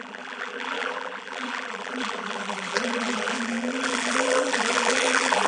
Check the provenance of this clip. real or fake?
fake